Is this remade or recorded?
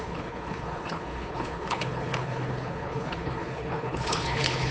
remade